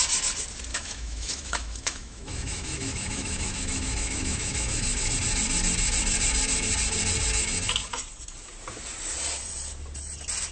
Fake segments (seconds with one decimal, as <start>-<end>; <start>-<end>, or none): 0.7-5.1